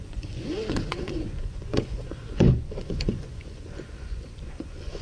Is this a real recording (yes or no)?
no